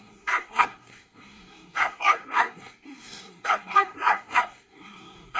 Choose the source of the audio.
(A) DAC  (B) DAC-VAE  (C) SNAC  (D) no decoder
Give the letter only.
C